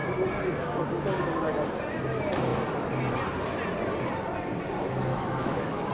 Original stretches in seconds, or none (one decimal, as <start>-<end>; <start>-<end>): 0.0-5.1